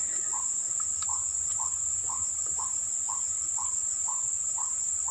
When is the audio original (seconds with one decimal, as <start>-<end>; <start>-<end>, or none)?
0.0-5.1

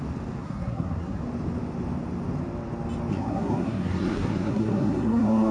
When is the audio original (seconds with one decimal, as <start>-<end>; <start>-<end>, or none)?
0.0-0.4; 1.2-3.1

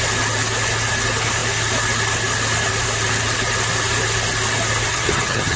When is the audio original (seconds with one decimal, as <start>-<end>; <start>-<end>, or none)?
0.0-4.9